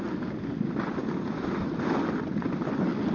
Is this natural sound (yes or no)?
yes